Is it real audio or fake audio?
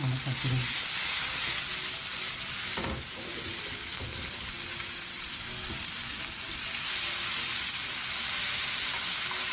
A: real